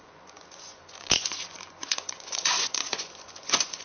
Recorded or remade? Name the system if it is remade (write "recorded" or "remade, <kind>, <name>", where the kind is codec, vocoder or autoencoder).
remade, vocoder, Vocos